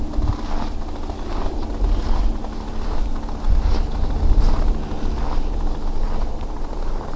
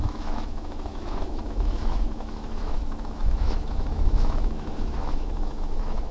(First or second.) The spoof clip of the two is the second